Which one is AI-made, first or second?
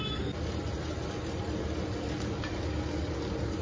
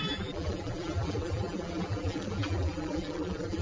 second